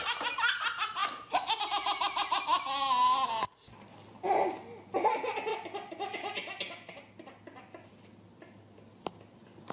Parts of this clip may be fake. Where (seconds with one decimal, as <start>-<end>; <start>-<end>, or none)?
none